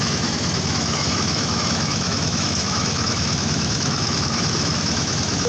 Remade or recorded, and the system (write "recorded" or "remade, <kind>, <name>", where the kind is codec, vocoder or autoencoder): remade, autoencoder, DAC-VAE